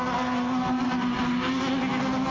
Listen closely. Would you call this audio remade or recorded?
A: recorded